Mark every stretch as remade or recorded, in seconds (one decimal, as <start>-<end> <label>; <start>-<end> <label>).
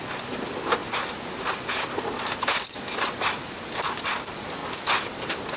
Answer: 0.0-5.6 recorded